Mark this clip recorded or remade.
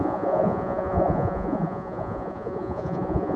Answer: remade